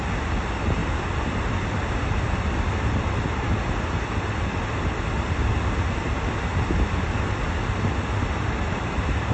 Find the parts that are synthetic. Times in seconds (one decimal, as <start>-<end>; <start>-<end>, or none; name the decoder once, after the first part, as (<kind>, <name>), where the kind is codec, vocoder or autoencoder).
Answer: none